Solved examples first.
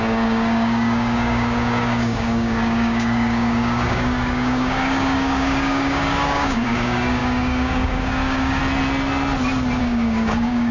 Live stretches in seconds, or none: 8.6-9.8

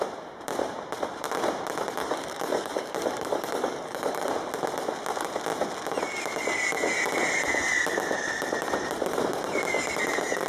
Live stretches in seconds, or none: 0.0-2.0; 4.3-10.5

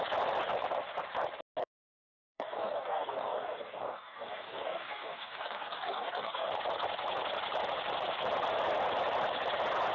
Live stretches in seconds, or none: 0.0-1.6; 6.5-9.9

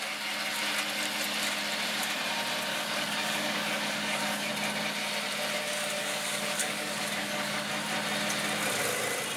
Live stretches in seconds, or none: 0.0-2.7; 4.5-6.0; 7.7-9.4

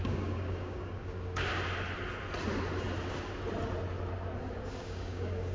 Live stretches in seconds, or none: 1.5-4.8

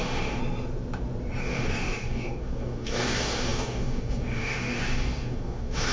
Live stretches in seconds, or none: 0.4-1.4

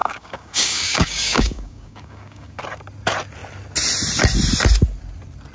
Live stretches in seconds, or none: 2.6-5.5